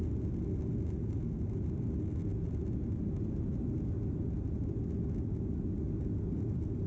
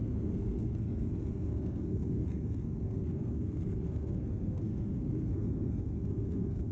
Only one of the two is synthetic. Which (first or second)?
second